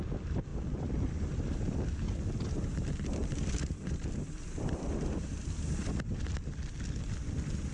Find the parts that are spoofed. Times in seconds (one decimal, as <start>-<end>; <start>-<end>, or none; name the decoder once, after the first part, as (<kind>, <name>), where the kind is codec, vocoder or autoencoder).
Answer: 0.5-1.3 (vocoder, BigVGAN v2); 3.2-5.9